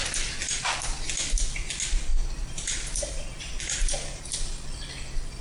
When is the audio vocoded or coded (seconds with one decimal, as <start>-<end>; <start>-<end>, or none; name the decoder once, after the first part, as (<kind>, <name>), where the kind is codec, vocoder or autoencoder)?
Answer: 2.1-4.2 (vocoder, BigVGAN v2)